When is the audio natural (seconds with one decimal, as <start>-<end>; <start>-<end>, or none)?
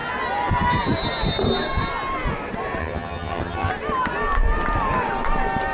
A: 0.0-2.8; 3.7-5.7